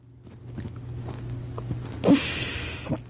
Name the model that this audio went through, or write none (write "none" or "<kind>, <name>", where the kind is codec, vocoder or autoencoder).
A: none